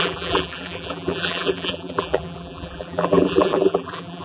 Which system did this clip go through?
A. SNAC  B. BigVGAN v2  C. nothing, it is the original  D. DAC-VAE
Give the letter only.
B